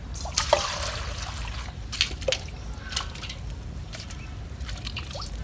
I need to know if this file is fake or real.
real